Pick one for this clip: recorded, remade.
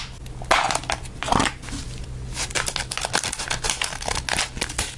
recorded